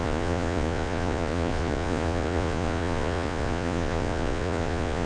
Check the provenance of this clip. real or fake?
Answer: fake